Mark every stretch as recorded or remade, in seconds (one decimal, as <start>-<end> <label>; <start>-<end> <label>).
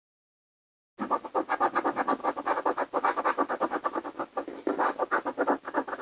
0.0-6.0 recorded